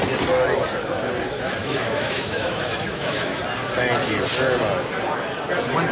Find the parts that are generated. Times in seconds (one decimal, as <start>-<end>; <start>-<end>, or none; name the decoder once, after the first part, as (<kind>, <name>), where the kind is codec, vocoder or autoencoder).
1.6-3.4 (autoencoder, DAC-VAE)